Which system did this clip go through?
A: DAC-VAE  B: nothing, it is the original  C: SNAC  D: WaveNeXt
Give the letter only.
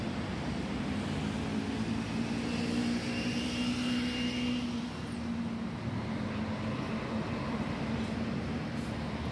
B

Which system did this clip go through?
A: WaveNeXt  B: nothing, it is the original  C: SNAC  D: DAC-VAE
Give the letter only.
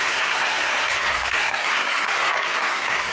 C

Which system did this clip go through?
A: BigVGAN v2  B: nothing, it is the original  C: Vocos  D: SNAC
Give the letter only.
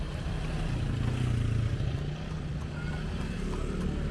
B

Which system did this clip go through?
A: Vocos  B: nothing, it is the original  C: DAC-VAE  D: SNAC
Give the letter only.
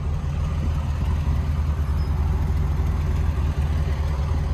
B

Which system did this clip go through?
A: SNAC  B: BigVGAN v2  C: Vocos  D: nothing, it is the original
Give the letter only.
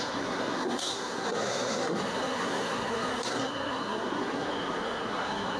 A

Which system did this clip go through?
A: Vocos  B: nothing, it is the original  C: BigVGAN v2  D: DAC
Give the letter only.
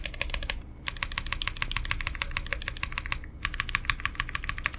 B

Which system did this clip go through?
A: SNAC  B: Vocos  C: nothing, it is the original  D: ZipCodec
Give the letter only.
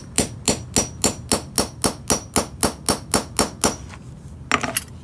C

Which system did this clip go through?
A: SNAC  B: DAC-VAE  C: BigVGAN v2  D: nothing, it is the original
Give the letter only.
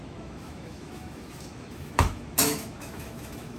B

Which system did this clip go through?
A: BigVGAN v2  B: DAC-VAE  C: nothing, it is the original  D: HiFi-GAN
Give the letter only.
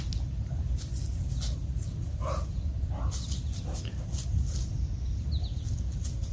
C